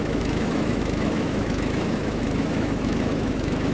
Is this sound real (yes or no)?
no